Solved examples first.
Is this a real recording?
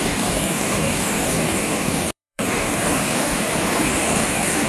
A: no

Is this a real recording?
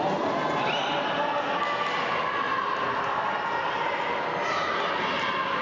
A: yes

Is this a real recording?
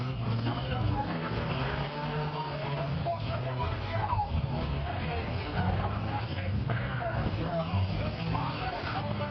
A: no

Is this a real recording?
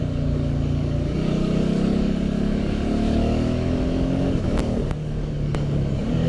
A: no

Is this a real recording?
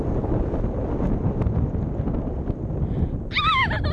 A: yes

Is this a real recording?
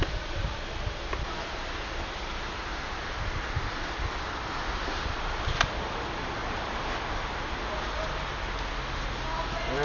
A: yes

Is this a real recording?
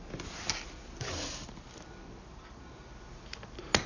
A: yes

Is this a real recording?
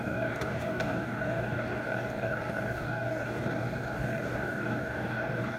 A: no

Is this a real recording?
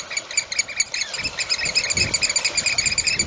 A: yes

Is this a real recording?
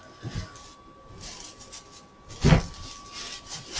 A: yes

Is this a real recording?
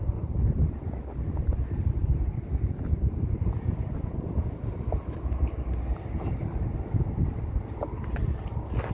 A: yes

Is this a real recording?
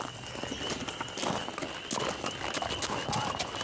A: yes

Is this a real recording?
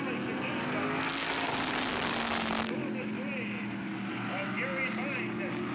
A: yes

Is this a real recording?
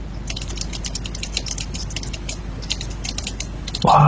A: yes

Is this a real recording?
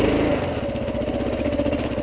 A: yes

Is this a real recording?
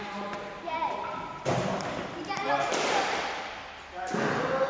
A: yes